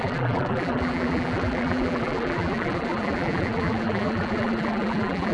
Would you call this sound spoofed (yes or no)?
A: yes